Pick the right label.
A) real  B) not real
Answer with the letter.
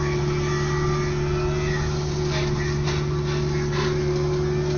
A